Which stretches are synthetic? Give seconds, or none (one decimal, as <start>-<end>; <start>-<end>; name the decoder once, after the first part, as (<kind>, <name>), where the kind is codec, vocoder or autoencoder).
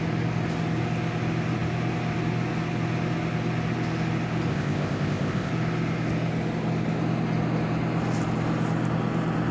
4.5-5.5 (codec, ZipCodec)